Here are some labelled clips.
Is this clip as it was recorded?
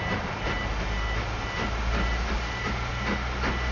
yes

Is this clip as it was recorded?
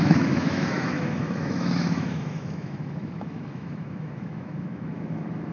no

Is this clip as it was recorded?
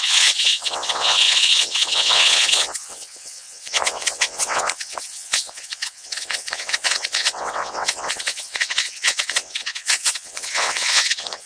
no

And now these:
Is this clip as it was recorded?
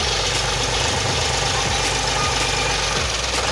yes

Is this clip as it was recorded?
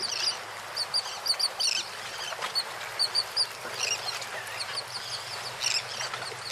yes